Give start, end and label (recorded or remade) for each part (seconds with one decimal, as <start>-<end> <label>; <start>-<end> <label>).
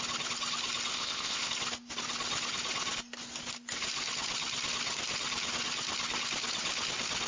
0.0-0.9 recorded; 0.9-1.5 remade; 1.5-7.3 recorded